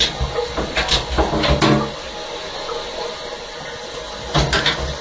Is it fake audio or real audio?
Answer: real